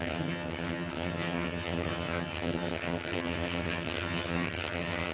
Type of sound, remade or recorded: remade